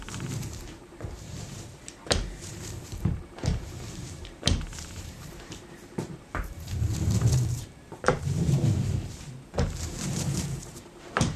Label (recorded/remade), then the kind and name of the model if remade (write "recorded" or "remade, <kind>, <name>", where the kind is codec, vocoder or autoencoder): remade, vocoder, BigVGAN v2